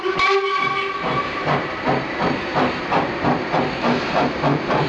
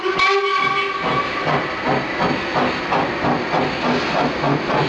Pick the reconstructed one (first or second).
first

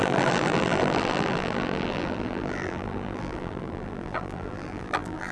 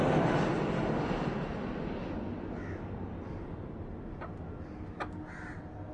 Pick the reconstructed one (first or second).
first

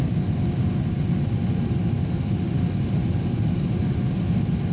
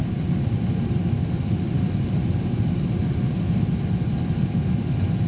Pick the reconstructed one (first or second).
second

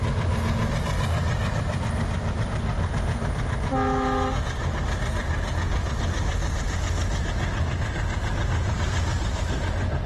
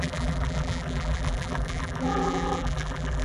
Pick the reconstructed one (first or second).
second